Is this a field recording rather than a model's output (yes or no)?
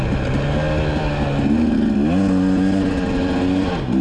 yes